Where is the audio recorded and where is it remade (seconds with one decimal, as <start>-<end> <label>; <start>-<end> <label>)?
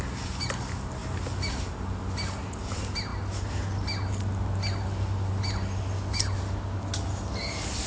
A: 0.0-7.9 recorded